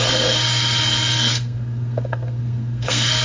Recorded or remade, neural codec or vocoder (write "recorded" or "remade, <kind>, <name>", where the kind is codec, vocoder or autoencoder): remade, codec, SNAC